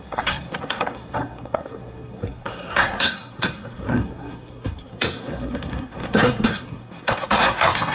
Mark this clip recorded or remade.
remade